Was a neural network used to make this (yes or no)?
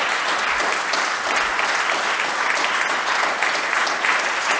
no